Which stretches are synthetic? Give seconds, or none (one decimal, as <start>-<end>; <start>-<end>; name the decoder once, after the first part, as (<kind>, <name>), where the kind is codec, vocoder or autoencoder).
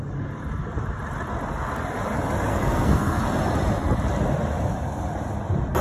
2.5-3.2 (codec, SNAC)